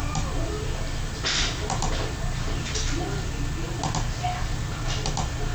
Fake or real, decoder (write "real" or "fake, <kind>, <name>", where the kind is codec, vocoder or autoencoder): real